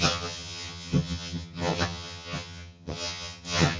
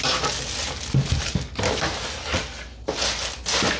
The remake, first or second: first